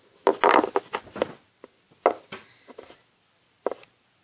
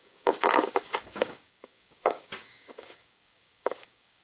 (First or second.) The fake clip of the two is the second